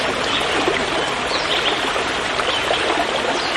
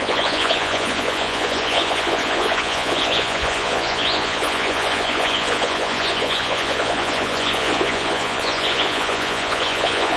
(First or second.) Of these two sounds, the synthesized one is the second